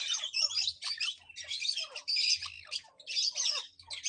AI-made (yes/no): no